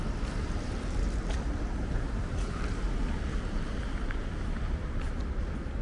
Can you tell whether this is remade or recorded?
recorded